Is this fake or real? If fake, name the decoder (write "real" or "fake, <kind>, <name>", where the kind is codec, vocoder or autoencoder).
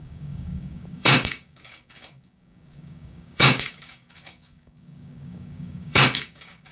fake, codec, DAC